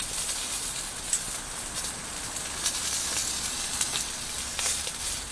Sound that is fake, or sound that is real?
real